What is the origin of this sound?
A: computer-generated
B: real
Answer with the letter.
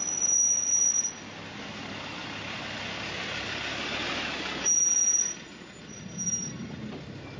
B